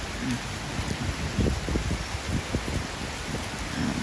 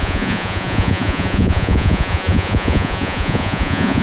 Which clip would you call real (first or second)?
first